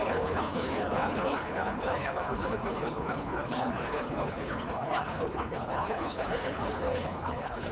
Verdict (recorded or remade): remade